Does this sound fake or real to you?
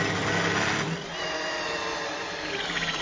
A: real